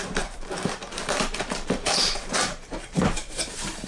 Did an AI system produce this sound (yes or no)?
yes